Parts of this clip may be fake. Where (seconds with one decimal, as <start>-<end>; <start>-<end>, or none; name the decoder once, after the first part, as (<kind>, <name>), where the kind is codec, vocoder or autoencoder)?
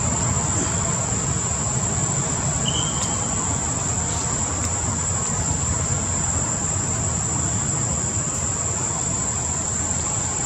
4.4-7.9 (vocoder, BigVGAN v2)